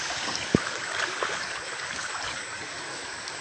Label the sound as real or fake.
fake